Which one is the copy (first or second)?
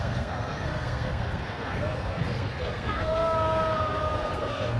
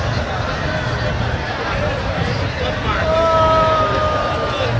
first